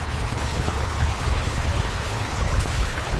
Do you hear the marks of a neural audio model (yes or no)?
yes